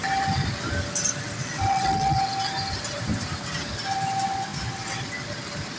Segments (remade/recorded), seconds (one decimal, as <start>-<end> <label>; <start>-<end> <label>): 0.0-1.4 recorded; 1.4-2.2 remade; 2.2-5.8 recorded